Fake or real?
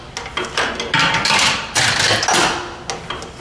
real